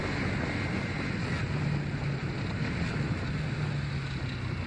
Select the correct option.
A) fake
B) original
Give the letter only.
B